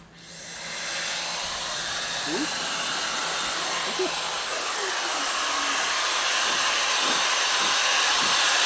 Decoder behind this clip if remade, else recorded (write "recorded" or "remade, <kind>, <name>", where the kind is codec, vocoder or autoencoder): recorded